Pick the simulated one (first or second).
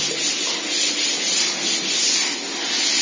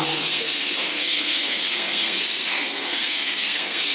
second